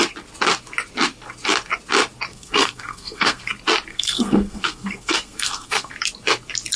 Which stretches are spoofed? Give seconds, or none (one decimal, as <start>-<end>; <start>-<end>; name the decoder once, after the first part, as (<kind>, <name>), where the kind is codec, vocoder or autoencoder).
2.3-3.5 (codec, SNAC); 3.9-5.9